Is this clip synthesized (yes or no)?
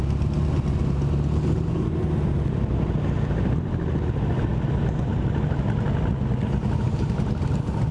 no